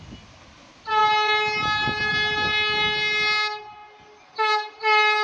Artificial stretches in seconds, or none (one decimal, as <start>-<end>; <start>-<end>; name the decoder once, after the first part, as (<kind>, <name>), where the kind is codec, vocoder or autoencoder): none